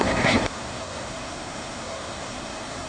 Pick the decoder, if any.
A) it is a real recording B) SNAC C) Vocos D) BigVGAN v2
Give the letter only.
B